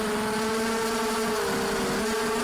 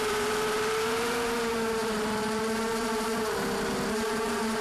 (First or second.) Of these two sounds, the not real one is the second